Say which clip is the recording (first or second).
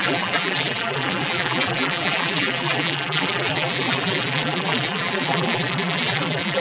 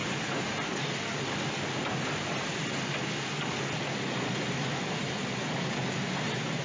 second